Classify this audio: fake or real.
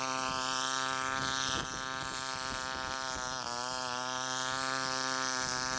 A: real